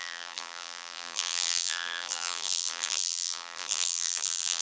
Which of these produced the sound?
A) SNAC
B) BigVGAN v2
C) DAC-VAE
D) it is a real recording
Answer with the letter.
B